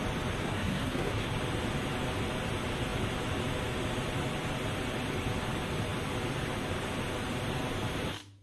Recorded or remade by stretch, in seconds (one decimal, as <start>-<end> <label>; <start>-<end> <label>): 0.0-0.4 recorded; 0.4-1.3 remade; 1.3-8.4 recorded